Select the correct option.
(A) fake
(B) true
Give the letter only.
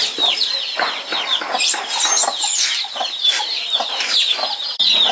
B